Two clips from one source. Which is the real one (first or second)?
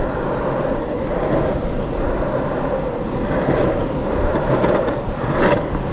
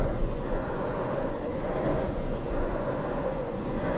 first